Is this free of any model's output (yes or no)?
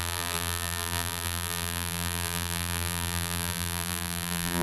no